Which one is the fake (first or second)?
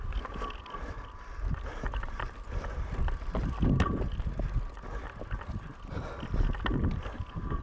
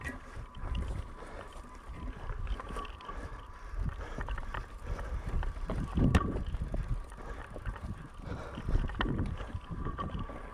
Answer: second